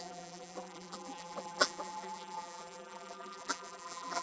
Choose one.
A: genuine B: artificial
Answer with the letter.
B